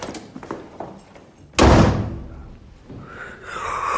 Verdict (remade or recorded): recorded